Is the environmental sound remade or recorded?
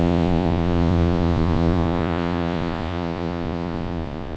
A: remade